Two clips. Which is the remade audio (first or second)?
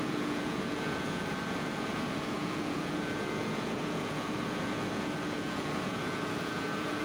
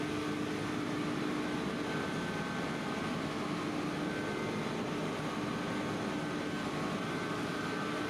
first